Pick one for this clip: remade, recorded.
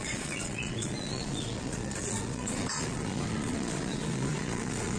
remade